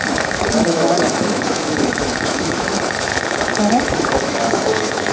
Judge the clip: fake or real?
fake